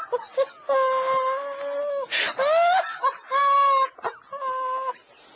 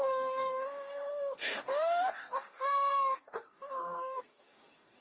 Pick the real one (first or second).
first